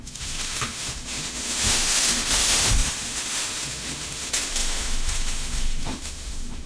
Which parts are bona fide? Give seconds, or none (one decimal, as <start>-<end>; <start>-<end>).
none